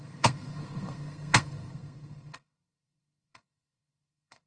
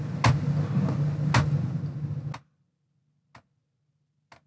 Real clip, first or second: second